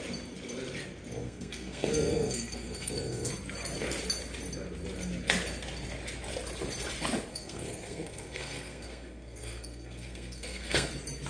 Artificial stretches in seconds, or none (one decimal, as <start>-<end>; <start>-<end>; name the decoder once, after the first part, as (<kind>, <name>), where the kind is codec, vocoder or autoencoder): 1.2-3.3 (codec, SNAC); 7.3-10.9